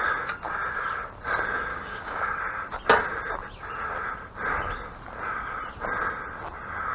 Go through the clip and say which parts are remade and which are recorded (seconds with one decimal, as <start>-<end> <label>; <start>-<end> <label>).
0.0-1.7 recorded; 1.7-2.4 remade; 2.4-6.9 recorded